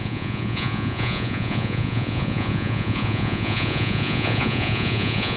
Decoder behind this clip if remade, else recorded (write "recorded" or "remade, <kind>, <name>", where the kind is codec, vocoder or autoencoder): remade, vocoder, Vocos